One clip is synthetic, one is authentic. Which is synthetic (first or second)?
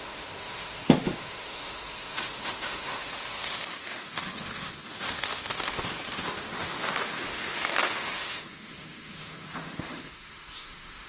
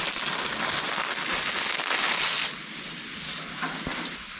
first